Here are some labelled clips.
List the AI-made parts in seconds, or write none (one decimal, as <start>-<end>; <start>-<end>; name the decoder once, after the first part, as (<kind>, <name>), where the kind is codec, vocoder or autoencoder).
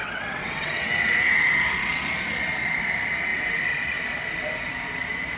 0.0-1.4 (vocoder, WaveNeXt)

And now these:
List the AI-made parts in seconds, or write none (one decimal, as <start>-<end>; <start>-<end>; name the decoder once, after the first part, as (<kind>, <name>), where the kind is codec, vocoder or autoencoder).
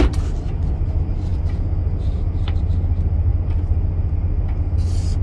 none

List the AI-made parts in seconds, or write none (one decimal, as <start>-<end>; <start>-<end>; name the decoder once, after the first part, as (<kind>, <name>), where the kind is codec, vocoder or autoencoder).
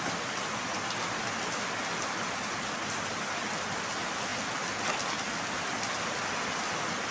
none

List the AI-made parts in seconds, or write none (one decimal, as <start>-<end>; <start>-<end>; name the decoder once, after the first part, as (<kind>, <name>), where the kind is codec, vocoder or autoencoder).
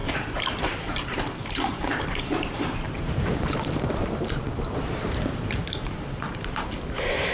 0.0-7.3 (vocoder, BigVGAN v2)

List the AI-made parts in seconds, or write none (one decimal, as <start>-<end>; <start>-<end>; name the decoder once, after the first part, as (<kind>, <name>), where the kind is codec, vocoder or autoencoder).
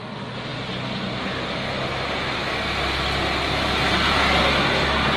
none